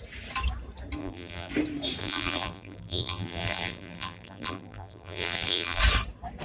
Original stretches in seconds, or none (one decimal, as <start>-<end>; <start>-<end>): 0.0-1.0; 1.5-2.0; 5.8-6.4